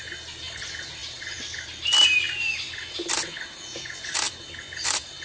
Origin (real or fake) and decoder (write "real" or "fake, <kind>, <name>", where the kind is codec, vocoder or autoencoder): real